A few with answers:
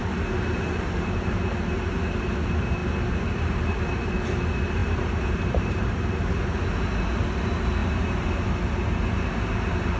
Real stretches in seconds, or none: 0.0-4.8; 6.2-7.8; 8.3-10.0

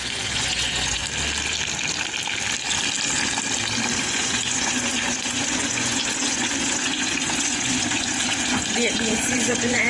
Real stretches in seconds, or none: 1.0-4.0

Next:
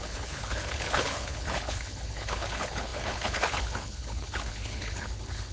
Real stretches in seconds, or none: none